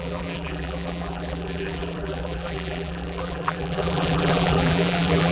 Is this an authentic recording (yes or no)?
no